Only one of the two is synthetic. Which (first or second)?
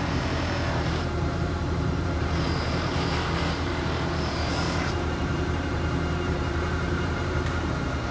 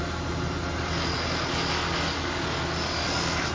first